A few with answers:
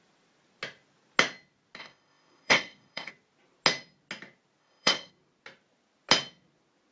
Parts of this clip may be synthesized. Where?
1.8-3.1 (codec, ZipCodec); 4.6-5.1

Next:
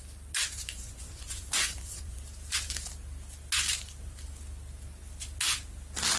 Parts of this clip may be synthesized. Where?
0.6-2.2 (vocoder, Vocos)